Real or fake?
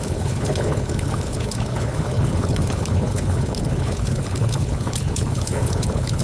fake